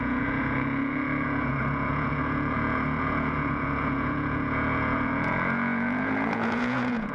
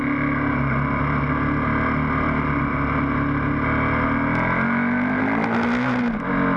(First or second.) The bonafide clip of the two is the second